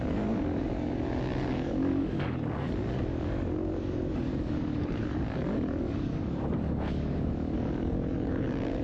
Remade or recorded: remade